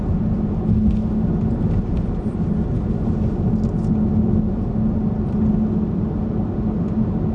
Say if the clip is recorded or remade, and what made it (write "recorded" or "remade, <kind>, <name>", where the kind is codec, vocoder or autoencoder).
recorded